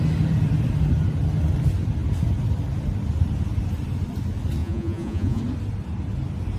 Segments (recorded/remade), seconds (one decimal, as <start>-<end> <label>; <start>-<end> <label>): 0.0-4.6 recorded; 4.6-5.4 remade; 5.4-6.6 recorded